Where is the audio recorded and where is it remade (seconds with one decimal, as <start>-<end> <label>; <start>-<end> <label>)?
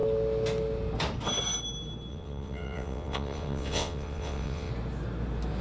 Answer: 0.0-2.1 recorded; 2.1-4.7 remade; 4.7-5.6 recorded